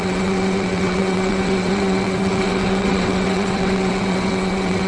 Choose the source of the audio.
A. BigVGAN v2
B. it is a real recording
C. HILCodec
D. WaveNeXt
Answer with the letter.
D